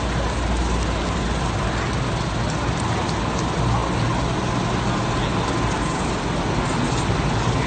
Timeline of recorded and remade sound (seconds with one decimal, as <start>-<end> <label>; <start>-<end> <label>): 0.0-7.7 recorded